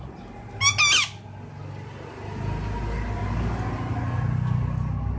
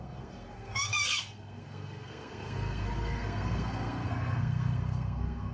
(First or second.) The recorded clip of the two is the first